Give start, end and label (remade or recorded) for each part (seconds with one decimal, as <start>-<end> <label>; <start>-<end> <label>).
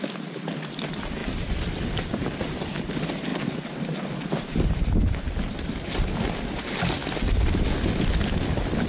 0.0-3.3 recorded; 3.3-4.8 remade; 4.8-8.9 recorded